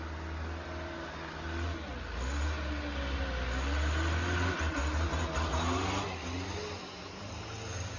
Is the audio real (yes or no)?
yes